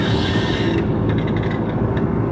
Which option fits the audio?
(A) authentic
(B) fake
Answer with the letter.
B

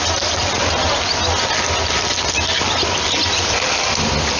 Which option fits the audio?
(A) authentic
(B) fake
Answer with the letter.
A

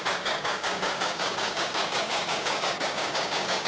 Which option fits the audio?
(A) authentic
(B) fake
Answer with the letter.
B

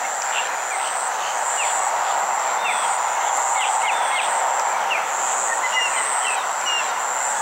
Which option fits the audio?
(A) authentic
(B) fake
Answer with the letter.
A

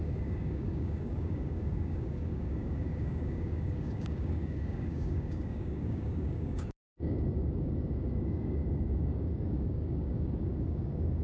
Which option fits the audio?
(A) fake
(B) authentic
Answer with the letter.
A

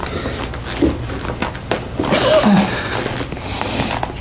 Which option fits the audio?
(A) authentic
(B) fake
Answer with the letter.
A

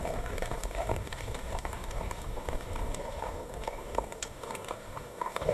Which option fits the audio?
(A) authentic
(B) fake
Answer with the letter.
B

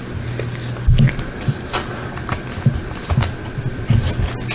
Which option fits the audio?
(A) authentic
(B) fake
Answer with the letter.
A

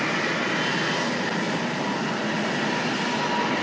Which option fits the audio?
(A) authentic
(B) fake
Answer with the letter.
A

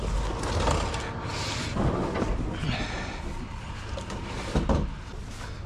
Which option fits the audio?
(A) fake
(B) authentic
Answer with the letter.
B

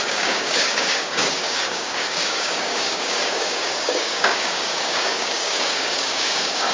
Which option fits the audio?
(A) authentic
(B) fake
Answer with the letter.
B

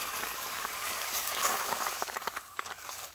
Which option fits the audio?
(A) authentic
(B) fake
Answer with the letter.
B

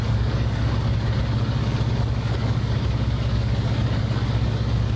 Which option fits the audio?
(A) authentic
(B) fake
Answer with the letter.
B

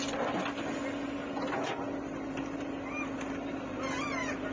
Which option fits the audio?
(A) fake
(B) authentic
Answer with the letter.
B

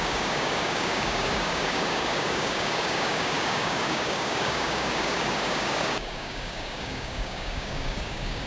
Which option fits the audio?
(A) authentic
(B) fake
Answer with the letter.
B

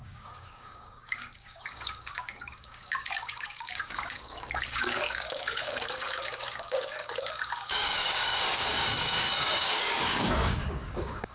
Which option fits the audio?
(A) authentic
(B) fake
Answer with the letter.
B